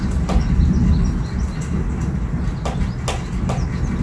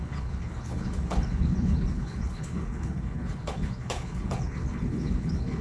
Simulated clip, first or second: second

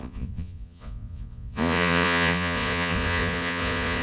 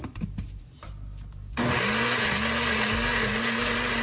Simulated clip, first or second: first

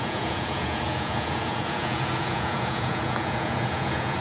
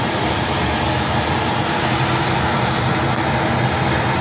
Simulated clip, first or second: first